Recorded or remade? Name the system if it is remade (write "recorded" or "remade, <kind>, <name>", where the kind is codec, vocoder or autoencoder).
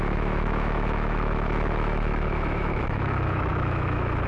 remade, autoencoder, DAC-VAE